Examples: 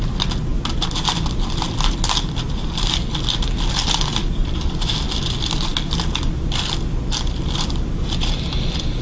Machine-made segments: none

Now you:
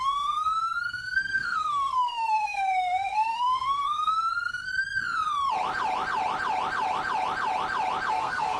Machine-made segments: 0.0-4.7 (codec, SNAC); 8.1-8.6

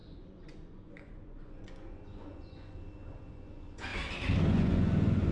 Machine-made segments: 0.0-3.9 (vocoder, Vocos); 4.5-5.3

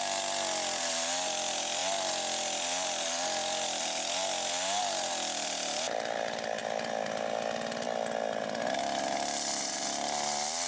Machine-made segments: none

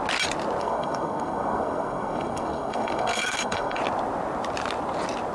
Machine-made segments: 0.6-3.8 (codec, SNAC)

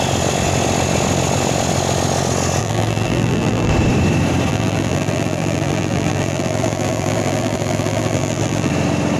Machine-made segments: 2.6-3.7 (vocoder, BigVGAN v2); 4.5-8.7

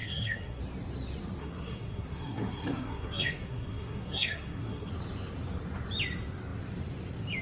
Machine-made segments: 0.0-0.6 (codec, SNAC); 1.4-4.9

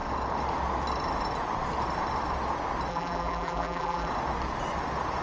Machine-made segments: 2.9-4.1 (vocoder, BigVGAN v2)